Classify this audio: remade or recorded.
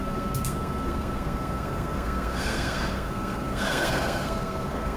remade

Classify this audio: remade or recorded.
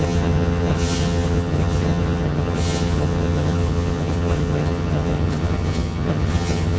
remade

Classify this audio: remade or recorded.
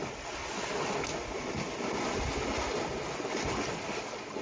recorded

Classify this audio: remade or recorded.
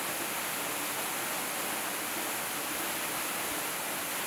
recorded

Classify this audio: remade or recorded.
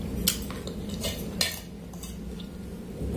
recorded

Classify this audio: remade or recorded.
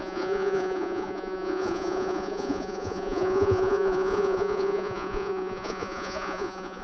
remade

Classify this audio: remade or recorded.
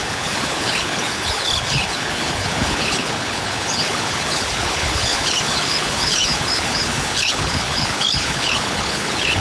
remade